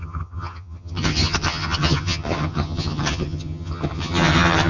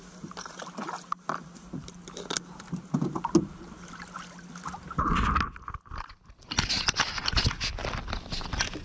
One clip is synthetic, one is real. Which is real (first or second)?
second